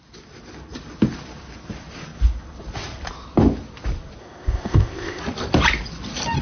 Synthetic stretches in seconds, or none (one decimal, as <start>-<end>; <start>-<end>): 4.2-5.2